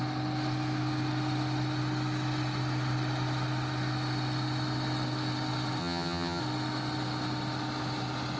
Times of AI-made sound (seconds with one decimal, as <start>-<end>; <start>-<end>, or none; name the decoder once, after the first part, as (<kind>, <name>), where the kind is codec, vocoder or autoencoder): 5.8-6.4 (vocoder, HiFi-GAN)